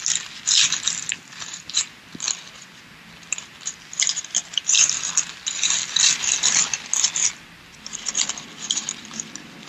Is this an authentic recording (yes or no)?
yes